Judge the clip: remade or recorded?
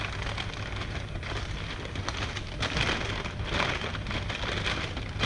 recorded